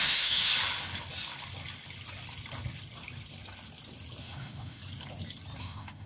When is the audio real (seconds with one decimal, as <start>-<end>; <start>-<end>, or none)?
0.5-4.2; 4.8-5.6

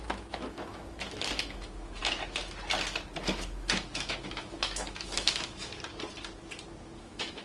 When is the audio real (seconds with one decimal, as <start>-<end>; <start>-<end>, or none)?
2.0-3.2; 5.7-7.0

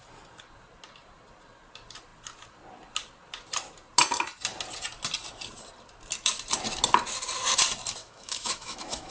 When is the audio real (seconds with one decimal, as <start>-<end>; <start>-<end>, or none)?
0.0-8.0